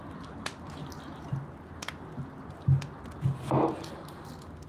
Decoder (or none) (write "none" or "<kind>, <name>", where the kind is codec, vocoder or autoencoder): none